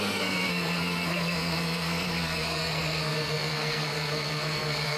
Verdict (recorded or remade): remade